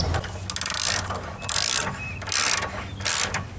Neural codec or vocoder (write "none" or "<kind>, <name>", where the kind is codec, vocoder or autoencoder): none